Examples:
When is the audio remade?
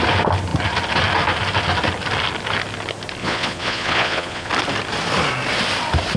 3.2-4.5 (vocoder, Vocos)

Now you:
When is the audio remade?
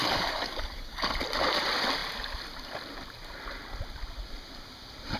0.0-1.1 (codec, DAC)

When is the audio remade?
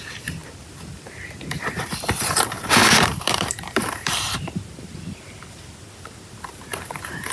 0.4-4.5 (vocoder, BigVGAN v2); 6.7-7.3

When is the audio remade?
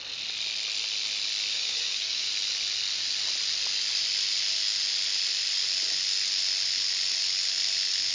1.5-2.3 (codec, DAC)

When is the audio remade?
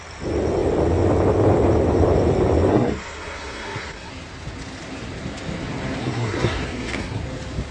2.7-4.1 (codec, SNAC); 6.0-7.2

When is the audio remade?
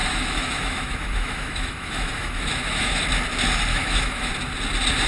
0.0-3.0 (autoencoder, DAC-VAE); 3.7-4.3